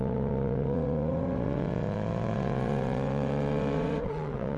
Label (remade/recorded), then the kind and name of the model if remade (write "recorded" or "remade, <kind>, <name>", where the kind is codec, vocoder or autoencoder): remade, vocoder, WaveNeXt